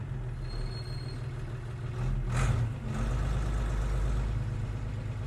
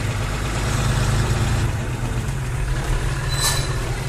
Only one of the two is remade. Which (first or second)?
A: second